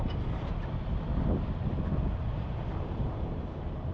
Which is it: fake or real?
real